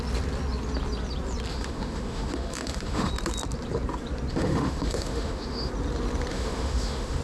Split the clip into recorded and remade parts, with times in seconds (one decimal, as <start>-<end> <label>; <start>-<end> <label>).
0.0-1.5 recorded; 1.5-3.1 remade; 3.1-4.3 recorded; 4.3-5.7 remade; 5.7-6.3 recorded; 6.3-7.2 remade